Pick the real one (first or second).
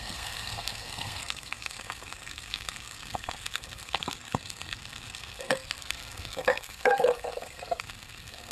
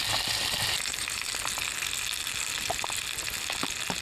second